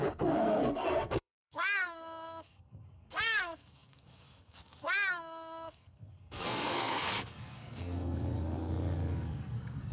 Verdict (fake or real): fake